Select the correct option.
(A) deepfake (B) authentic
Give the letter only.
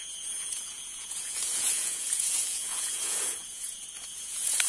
A